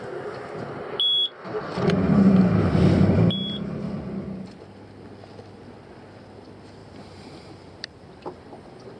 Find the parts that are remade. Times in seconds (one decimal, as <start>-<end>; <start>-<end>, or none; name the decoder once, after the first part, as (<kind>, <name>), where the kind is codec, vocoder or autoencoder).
6.8-8.4 (vocoder, BigVGAN v2)